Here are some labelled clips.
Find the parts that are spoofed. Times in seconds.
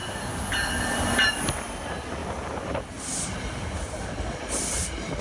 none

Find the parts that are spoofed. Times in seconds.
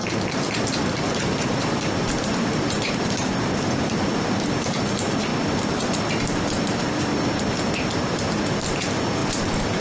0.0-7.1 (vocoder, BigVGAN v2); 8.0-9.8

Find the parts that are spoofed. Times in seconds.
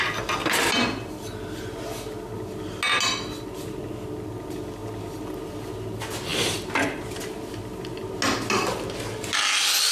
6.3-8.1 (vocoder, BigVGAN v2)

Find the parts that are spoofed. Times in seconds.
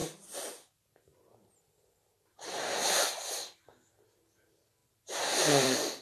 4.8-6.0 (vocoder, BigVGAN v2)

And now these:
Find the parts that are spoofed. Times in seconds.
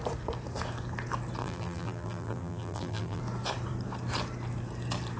1.4-3.2 (vocoder, BigVGAN v2)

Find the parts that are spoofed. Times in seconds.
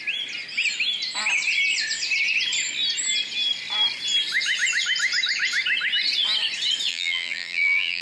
6.9-8.0 (vocoder, BigVGAN v2)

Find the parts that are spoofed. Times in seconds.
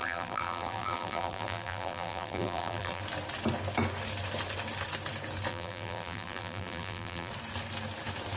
0.0-3.0 (vocoder, BigVGAN v2); 5.5-7.3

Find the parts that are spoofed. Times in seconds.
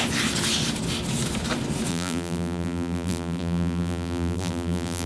1.9-5.1 (vocoder, BigVGAN v2)